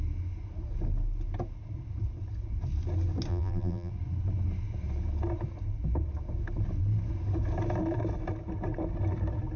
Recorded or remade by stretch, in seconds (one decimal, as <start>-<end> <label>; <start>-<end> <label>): 0.0-3.3 recorded; 3.3-3.9 remade; 3.9-9.6 recorded